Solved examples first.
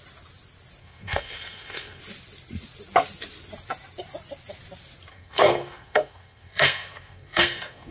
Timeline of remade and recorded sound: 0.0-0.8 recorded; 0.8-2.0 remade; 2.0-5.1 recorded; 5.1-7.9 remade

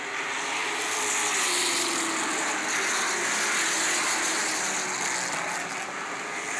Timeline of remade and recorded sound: 0.0-6.6 recorded

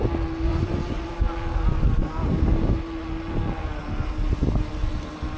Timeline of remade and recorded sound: 0.0-0.5 recorded; 0.5-1.1 remade; 1.1-5.4 recorded